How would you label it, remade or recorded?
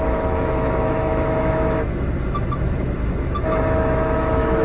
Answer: remade